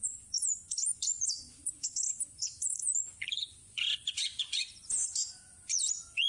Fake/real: fake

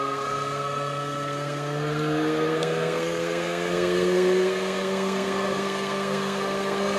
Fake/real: fake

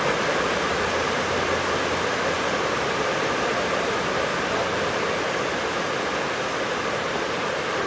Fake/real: real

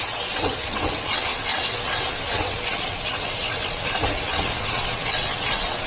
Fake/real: fake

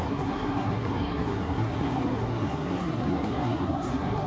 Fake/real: fake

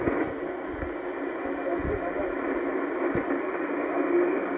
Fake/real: fake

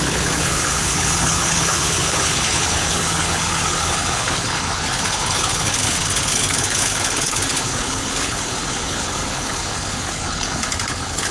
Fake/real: fake